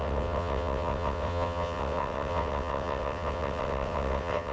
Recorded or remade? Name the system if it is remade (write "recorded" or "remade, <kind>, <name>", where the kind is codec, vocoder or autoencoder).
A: remade, vocoder, WaveNeXt